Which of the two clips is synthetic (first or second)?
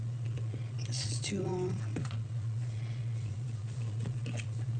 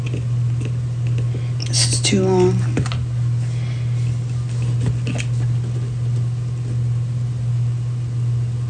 first